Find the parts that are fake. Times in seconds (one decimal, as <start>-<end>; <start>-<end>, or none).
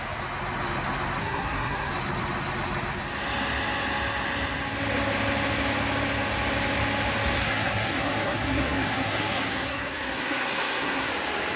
1.2-1.9; 7.4-11.1